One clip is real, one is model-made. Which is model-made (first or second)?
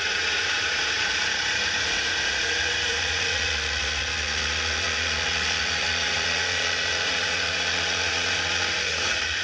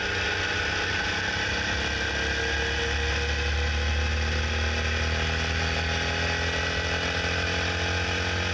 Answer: first